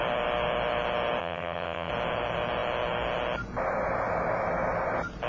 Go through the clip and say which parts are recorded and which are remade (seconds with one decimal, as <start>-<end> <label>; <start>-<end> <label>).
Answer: 0.0-1.2 recorded; 1.2-1.9 remade; 1.9-5.3 recorded